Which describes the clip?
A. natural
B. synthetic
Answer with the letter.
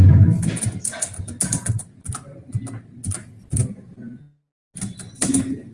A